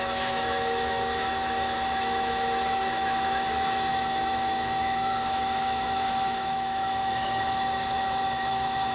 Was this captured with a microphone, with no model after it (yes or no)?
no